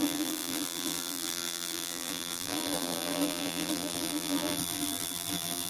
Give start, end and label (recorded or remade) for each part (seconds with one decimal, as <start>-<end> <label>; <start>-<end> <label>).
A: 0.0-5.7 remade